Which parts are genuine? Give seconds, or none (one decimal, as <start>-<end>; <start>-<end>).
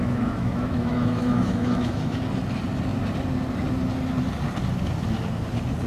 2.2-5.9